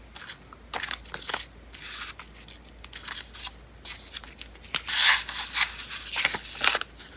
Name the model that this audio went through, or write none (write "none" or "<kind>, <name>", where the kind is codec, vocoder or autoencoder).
none